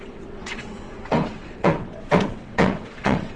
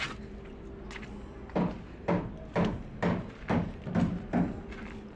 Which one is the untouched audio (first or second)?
second